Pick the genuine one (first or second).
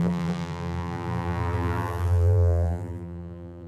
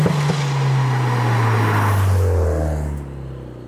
second